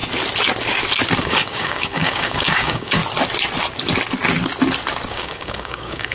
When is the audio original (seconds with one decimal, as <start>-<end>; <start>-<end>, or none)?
0.0-1.2; 3.0-5.1